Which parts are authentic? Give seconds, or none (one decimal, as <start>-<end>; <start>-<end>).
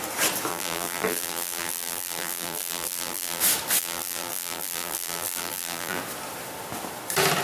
0.0-0.5; 3.4-3.8; 6.0-7.4